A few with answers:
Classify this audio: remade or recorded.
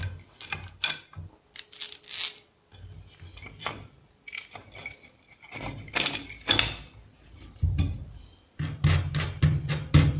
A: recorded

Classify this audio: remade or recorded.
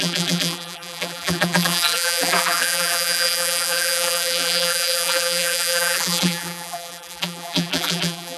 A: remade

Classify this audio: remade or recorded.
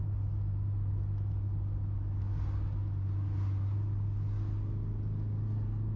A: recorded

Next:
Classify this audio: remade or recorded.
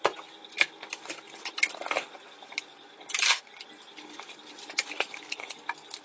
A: recorded